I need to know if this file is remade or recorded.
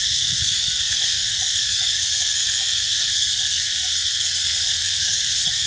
remade